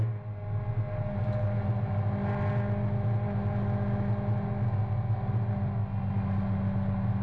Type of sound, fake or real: real